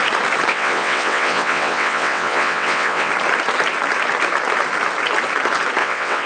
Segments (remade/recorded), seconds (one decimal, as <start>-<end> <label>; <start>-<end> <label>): 0.0-0.5 recorded; 0.5-3.1 remade; 3.1-5.8 recorded; 5.8-6.3 remade

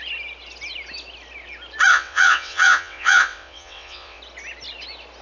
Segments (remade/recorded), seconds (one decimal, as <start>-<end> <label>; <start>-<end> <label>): 0.0-1.9 recorded; 1.9-4.2 remade; 4.2-5.2 recorded